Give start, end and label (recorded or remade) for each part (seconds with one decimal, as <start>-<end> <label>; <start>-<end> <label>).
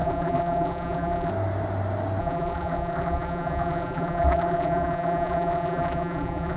0.0-1.3 remade; 1.3-2.2 recorded; 2.2-6.6 remade